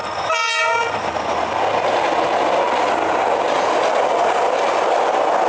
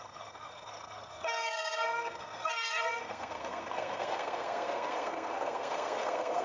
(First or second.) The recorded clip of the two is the first